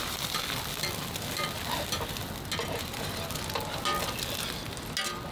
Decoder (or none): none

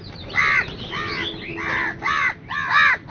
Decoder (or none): none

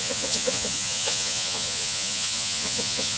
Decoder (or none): vocoder, Vocos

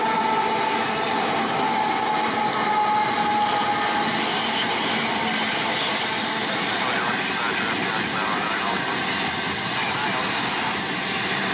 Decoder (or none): none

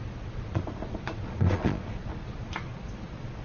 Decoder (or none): vocoder, Vocos